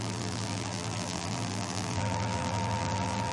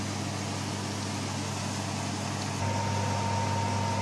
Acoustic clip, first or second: second